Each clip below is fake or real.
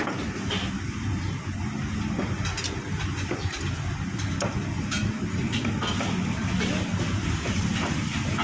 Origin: real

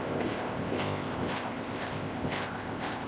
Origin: fake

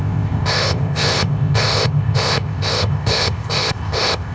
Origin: fake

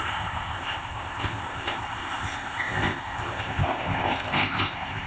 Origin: fake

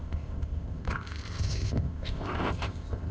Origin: fake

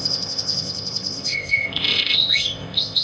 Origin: fake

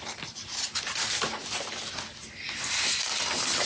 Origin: real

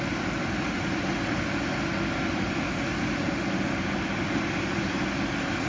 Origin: real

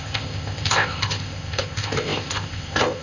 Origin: fake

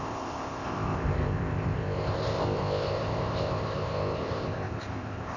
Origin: fake